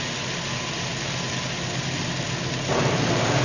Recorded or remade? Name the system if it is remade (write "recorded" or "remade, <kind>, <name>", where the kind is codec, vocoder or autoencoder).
recorded